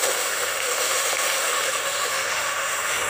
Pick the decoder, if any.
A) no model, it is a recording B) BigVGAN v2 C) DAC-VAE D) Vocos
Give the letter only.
C